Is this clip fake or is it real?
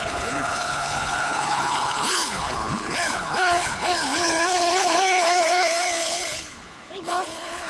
fake